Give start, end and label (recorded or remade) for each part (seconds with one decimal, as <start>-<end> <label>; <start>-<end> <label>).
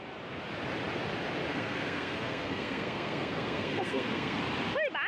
0.0-1.5 recorded; 1.5-4.4 remade; 4.4-5.1 recorded